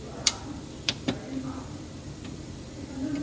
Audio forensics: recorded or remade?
remade